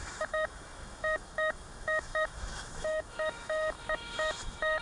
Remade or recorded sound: remade